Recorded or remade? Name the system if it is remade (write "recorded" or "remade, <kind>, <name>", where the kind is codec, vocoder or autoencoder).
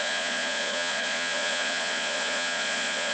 remade, vocoder, Vocos